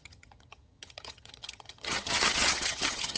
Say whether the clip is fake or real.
fake